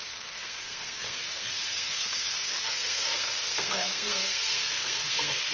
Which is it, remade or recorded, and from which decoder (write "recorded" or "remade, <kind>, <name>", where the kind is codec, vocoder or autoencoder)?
remade, codec, SNAC